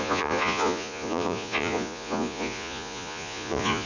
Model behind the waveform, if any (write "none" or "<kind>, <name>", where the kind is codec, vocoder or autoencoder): vocoder, Vocos